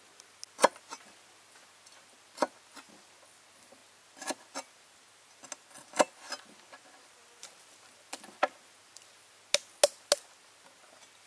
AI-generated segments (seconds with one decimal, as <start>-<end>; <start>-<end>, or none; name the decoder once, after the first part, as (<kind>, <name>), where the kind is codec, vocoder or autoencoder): none